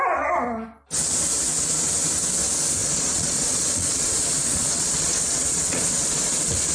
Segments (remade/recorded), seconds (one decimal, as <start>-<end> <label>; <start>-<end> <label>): 0.0-2.8 recorded; 2.8-6.7 remade